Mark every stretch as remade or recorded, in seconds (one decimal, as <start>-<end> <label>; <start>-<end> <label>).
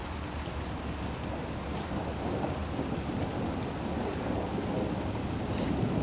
0.0-6.0 recorded